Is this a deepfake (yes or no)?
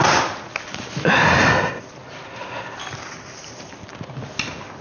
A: no